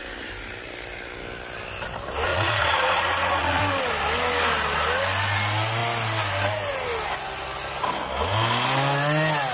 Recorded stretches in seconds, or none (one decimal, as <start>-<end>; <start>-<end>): 0.0-2.3; 3.6-9.5